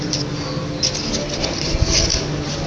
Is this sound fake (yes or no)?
no